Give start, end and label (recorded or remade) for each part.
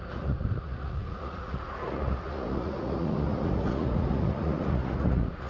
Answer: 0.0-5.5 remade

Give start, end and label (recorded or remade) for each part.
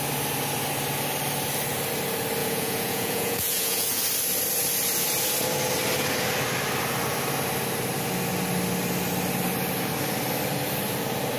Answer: 0.0-2.4 recorded; 2.4-4.0 remade; 4.0-11.4 recorded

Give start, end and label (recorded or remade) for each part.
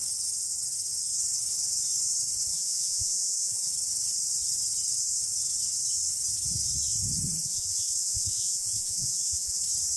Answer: 0.0-2.5 recorded; 2.5-3.7 remade; 3.7-7.4 recorded; 7.4-9.6 remade; 9.6-10.0 recorded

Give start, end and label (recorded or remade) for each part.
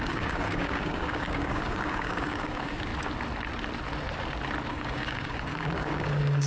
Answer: 0.0-2.9 remade; 2.9-4.7 recorded; 4.7-6.5 remade